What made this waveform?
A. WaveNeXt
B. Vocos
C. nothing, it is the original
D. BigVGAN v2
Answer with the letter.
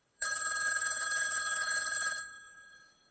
A